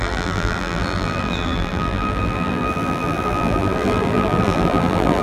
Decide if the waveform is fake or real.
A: fake